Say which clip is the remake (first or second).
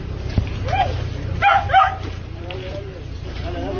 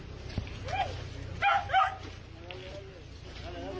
first